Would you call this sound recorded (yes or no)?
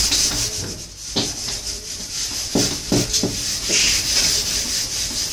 yes